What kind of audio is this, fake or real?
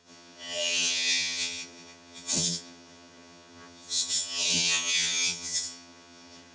fake